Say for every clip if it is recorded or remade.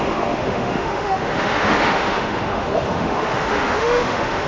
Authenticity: remade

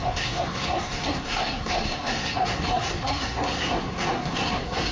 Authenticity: remade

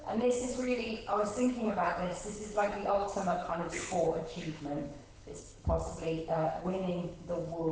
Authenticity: remade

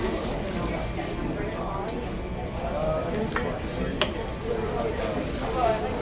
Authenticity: recorded